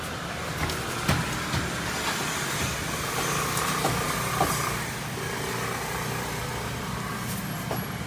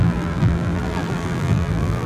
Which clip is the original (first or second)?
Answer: first